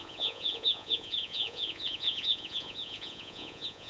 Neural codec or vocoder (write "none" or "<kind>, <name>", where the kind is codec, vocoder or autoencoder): vocoder, Vocos